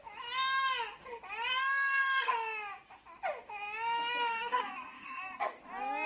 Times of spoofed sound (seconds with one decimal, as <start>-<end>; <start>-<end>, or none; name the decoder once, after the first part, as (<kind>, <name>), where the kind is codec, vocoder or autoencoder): 1.6-2.3 (codec, SNAC); 4.3-5.6

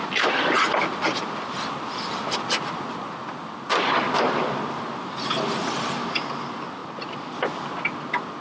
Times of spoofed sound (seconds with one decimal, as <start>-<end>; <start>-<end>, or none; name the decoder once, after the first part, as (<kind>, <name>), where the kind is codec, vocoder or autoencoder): none

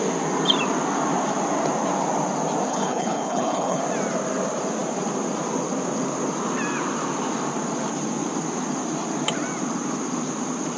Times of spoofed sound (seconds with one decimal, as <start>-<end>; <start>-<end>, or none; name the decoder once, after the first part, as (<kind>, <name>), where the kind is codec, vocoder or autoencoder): 2.7-3.8 (codec, HILCodec)

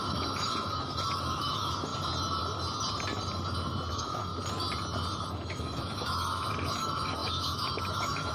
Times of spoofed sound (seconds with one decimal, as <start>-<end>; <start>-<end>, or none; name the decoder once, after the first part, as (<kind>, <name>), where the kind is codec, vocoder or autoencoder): 0.0-1.9 (autoencoder, DAC-VAE); 3.9-4.3; 5.3-8.3

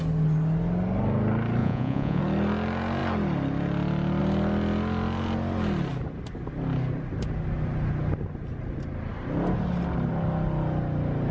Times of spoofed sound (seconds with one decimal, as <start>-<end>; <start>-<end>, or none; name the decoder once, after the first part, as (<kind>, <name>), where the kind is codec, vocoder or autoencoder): 1.6-2.2 (vocoder, Vocos)

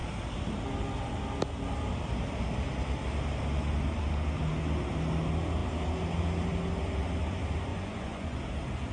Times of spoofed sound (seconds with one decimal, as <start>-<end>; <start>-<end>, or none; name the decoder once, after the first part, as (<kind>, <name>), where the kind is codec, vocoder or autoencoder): 7.7-8.4 (vocoder, Vocos)